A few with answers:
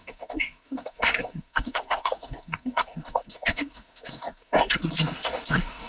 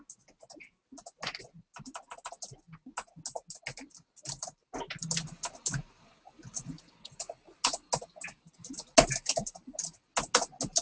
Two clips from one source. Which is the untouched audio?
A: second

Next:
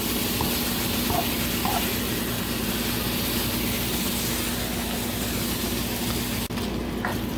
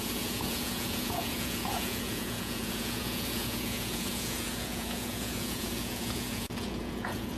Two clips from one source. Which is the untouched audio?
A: first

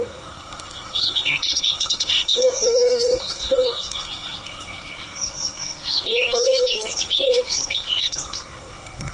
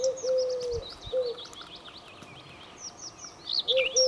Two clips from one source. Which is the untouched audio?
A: second